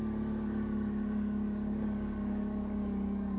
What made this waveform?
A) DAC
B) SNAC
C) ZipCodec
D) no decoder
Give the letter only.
A